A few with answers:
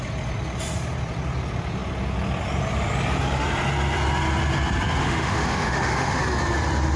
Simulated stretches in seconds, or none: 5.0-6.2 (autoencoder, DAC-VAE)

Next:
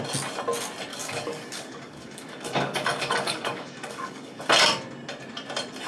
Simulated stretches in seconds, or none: 0.9-4.4 (codec, DAC)

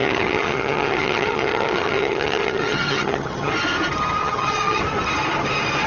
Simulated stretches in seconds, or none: 0.0-3.5 (vocoder, HiFi-GAN); 4.2-4.8

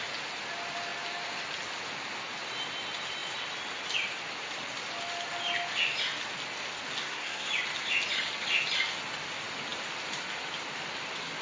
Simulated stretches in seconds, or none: 7.0-7.5 (codec, SNAC)